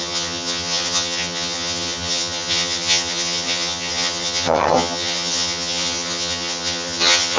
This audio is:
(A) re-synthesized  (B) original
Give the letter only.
A